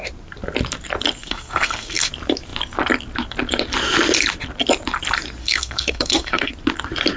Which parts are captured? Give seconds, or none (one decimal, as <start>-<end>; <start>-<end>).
0.0-1.2; 2.1-5.4; 6.5-7.2